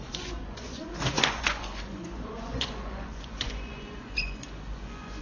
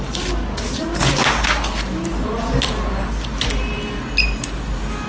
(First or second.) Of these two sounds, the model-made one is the first